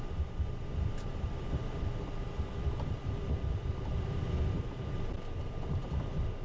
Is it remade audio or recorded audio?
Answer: remade